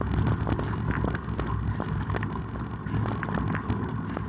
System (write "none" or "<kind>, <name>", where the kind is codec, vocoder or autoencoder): none